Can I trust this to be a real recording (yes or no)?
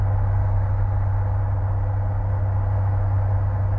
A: yes